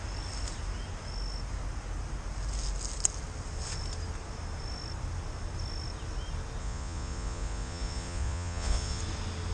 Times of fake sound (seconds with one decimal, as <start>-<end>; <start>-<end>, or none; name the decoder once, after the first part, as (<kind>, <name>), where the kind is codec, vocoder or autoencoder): 6.6-9.0 (vocoder, Vocos)